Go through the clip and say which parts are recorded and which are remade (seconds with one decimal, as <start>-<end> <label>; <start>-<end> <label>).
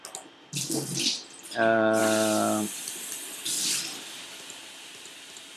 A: 0.0-5.6 recorded